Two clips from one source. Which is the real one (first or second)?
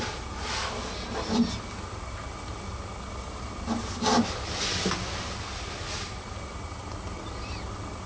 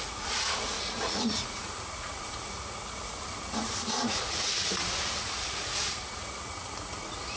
first